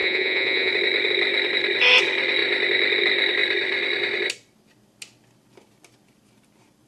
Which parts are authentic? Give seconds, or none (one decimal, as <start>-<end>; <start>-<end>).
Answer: 0.7-6.9